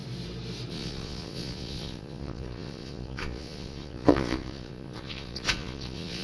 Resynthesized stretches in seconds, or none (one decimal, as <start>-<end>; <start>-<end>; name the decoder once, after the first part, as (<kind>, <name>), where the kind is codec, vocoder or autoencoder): 0.7-6.2 (vocoder, Vocos)